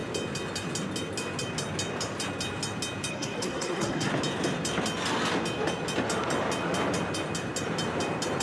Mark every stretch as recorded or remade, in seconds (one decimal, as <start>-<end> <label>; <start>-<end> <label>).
0.0-3.1 recorded; 3.1-4.1 remade; 4.1-8.4 recorded